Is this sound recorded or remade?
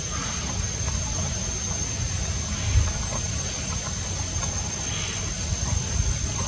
recorded